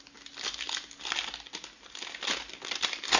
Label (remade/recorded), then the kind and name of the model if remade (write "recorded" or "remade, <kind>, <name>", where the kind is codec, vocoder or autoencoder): recorded